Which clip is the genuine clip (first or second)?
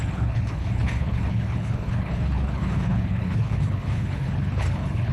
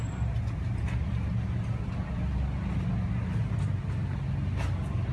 second